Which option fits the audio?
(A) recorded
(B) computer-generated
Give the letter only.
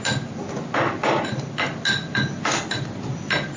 A